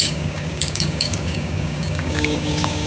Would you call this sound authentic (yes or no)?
no